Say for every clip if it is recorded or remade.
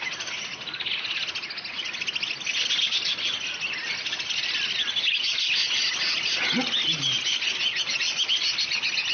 recorded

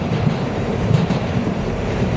remade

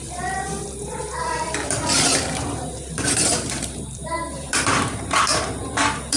remade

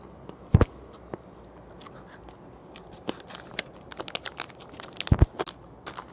recorded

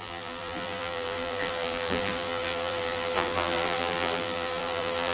remade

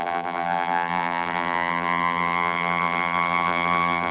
remade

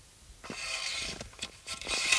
recorded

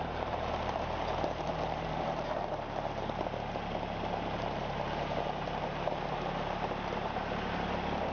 remade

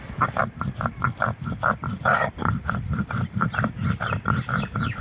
remade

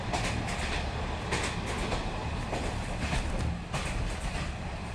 recorded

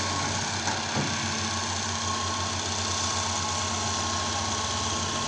recorded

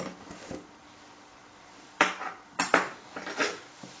remade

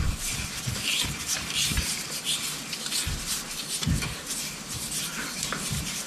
remade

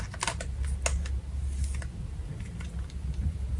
recorded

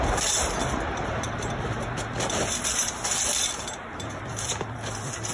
recorded